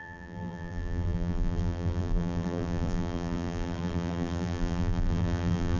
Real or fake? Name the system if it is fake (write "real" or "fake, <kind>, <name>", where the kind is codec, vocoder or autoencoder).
fake, vocoder, BigVGAN v2